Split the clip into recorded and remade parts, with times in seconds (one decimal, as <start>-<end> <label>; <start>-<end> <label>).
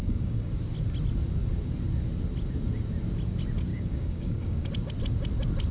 0.0-0.5 remade; 0.5-3.7 recorded; 3.7-4.7 remade; 4.7-5.7 recorded